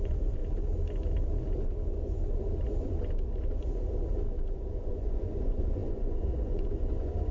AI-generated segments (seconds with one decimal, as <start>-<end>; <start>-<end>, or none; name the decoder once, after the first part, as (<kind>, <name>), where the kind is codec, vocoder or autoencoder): 0.0-0.4 (vocoder, Vocos); 4.8-7.3